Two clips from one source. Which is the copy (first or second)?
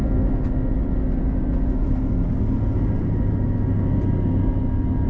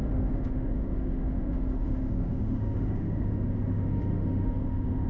second